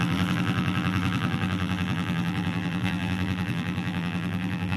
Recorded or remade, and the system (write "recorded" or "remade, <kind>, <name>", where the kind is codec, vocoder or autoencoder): remade, vocoder, BigVGAN v2